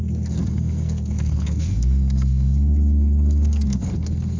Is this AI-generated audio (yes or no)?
yes